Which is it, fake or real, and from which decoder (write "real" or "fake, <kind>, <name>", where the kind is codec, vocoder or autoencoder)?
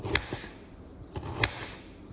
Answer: real